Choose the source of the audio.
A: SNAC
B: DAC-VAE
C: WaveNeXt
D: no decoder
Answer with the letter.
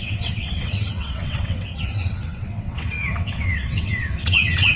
C